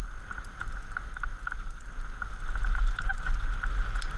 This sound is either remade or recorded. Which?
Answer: recorded